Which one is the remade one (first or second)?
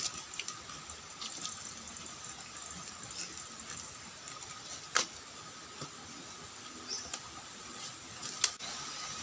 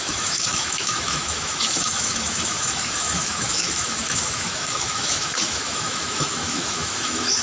second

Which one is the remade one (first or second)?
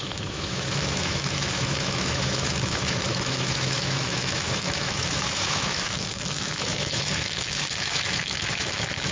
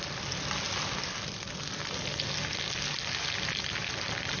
first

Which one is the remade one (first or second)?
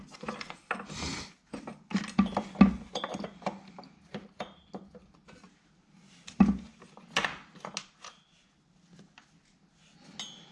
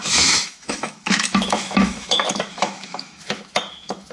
second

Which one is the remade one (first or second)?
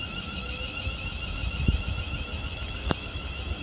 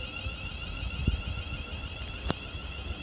first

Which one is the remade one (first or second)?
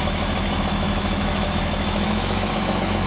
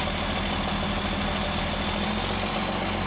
first